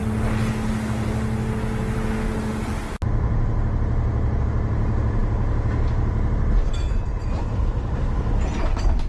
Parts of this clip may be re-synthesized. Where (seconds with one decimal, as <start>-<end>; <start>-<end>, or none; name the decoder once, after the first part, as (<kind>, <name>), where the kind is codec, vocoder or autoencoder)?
none